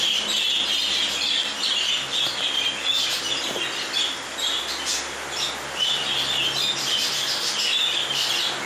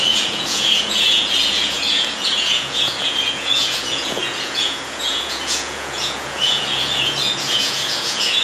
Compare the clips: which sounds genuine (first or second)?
first